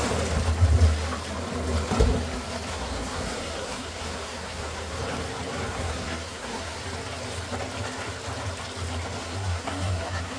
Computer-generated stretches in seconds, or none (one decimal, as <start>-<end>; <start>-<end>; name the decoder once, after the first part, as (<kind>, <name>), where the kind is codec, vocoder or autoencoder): 2.7-5.0 (codec, SNAC); 5.7-6.8; 9.2-10.4